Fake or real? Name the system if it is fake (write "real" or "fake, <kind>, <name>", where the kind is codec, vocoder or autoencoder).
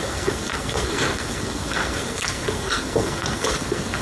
fake, codec, SNAC